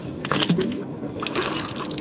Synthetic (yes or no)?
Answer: yes